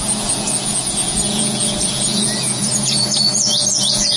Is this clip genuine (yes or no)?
no